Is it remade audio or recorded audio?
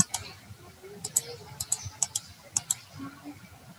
recorded